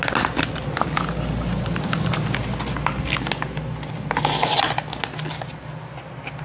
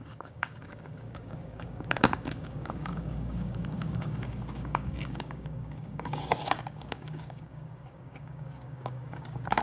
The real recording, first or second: first